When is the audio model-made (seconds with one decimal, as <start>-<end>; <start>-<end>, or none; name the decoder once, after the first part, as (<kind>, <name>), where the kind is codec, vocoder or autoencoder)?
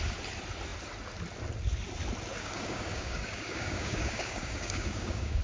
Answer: 2.4-5.4 (codec, DAC)